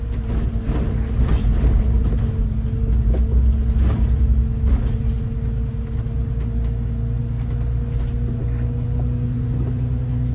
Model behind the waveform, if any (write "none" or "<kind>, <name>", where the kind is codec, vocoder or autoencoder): none